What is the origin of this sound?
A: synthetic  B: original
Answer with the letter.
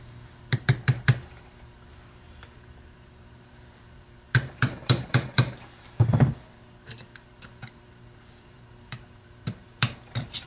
A